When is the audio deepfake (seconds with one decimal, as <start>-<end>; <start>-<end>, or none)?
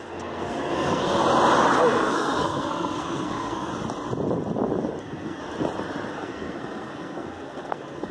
0.0-1.2; 1.8-3.7; 5.0-5.4; 6.1-8.1